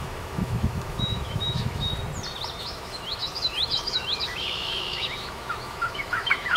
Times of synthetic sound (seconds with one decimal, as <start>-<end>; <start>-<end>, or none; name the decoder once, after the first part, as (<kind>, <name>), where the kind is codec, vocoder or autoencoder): 0.0-1.9 (autoencoder, DAC-VAE); 2.6-6.6